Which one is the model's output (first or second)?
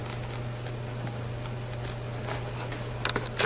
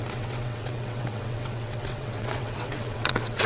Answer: second